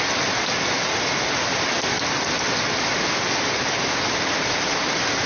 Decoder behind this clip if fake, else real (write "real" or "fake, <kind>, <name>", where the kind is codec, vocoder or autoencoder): real